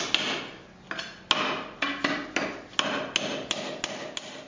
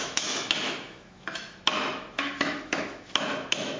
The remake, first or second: second